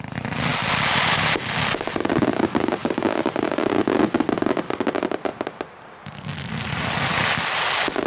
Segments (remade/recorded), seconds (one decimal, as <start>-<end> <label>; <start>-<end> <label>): 0.0-8.1 recorded